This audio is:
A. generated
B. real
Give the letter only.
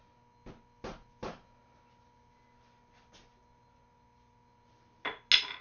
B